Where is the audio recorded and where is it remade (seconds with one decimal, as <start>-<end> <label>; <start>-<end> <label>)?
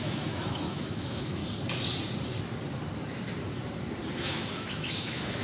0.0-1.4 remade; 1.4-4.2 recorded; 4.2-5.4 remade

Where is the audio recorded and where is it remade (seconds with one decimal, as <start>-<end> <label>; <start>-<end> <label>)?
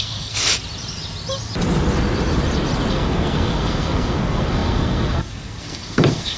0.0-0.5 remade; 0.5-2.9 recorded; 2.9-6.4 remade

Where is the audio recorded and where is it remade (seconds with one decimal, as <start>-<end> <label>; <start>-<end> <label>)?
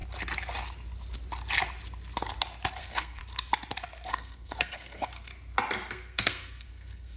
0.0-2.8 recorded; 2.8-3.2 remade; 3.2-4.1 recorded; 4.1-5.3 remade; 5.3-5.9 recorded; 5.9-7.2 remade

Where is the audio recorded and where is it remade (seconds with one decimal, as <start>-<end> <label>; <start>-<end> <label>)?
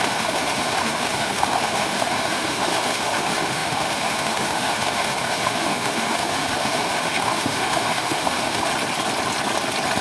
0.0-8.7 remade; 8.7-10.0 recorded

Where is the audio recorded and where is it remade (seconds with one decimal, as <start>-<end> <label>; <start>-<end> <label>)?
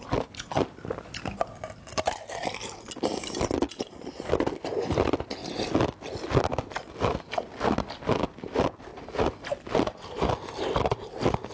0.0-11.5 recorded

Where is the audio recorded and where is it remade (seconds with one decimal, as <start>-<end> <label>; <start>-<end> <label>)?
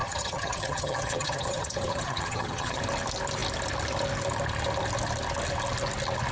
0.0-2.8 remade; 2.8-6.3 recorded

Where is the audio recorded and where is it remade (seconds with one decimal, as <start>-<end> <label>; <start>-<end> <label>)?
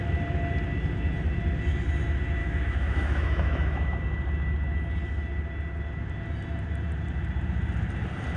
0.0-2.4 recorded; 2.4-4.0 remade; 4.0-8.4 recorded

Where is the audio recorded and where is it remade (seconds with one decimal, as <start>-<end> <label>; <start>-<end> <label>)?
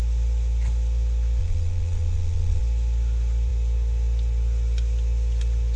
0.0-1.4 recorded; 1.4-2.6 remade; 2.6-5.8 recorded